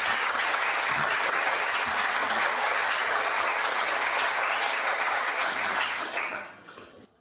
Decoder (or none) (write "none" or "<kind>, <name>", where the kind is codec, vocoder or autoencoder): vocoder, HiFi-GAN